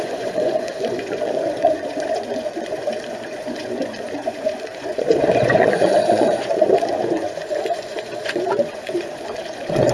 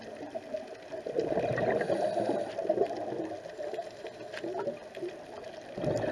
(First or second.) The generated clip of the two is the first